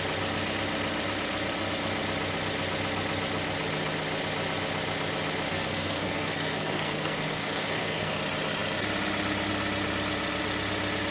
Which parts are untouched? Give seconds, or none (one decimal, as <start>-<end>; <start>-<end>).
0.0-5.5; 8.2-11.1